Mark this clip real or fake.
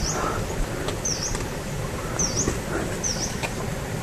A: real